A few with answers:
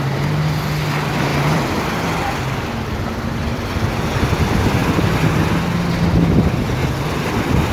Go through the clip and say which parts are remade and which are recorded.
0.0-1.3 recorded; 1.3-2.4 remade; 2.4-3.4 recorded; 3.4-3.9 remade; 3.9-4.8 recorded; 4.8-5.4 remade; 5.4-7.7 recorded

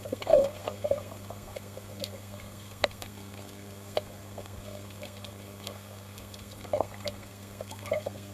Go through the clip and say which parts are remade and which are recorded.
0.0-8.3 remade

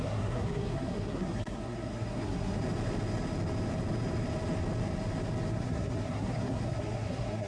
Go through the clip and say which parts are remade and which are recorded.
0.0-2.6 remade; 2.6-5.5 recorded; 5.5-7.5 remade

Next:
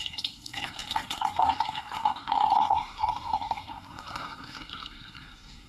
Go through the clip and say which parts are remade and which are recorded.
0.0-5.7 remade